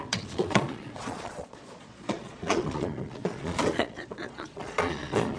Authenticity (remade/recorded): remade